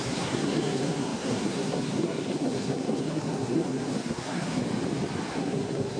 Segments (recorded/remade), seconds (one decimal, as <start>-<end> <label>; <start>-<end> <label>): 0.0-4.6 remade; 4.6-5.3 recorded; 5.3-6.0 remade